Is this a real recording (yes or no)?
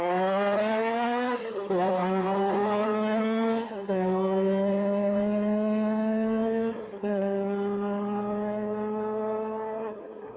no